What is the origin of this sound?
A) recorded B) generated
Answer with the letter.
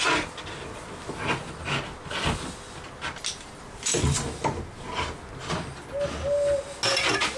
A